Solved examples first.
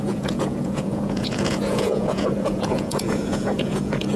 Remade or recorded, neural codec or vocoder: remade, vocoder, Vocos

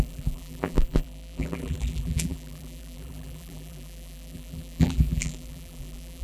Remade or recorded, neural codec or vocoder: remade, vocoder, BigVGAN v2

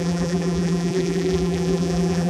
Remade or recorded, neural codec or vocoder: remade, vocoder, BigVGAN v2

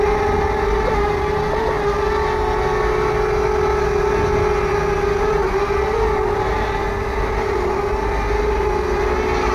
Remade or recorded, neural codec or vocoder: recorded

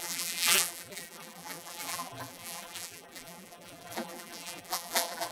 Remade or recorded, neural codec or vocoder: remade, vocoder, BigVGAN v2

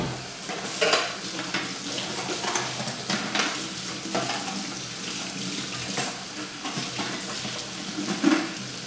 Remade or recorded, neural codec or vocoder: recorded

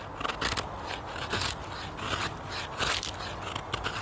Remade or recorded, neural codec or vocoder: recorded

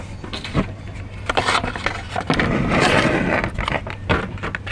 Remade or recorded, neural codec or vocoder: recorded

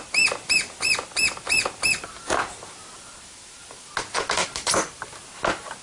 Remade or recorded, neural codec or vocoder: recorded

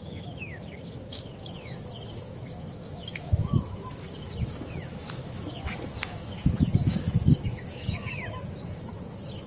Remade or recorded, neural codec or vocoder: remade, autoencoder, DAC-VAE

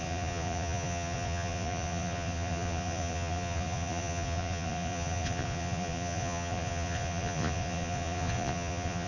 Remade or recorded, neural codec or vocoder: remade, vocoder, Vocos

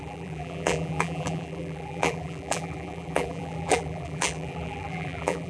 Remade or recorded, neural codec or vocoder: remade, vocoder, BigVGAN v2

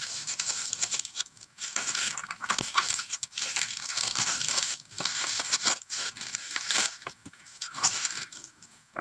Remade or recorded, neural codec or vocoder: remade, codec, DAC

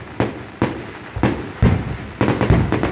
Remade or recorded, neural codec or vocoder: recorded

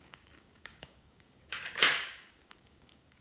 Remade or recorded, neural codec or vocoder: remade, codec, DAC